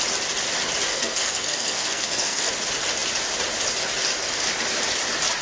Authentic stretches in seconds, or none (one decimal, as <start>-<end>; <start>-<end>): 0.0-0.9; 2.5-5.4